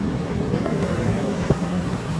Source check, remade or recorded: remade